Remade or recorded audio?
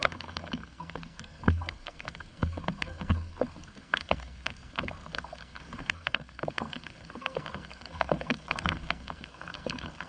remade